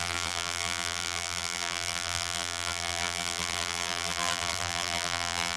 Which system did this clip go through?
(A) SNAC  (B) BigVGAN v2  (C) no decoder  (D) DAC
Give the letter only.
B